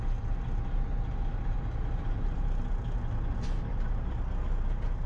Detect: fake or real real